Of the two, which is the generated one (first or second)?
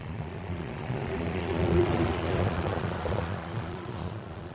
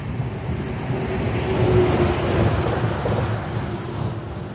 first